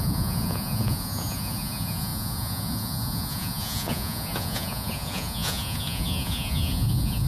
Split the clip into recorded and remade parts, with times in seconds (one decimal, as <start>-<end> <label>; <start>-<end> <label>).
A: 0.0-7.3 remade